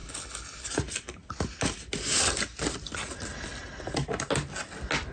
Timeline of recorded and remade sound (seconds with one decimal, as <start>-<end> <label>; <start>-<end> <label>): 0.0-0.7 remade; 0.7-5.1 recorded